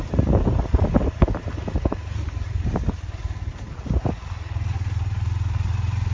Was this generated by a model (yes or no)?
no